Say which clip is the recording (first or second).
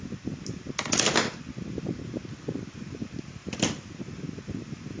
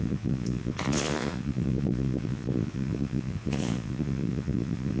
first